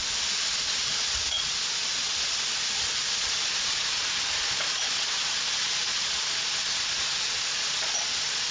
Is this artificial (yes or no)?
yes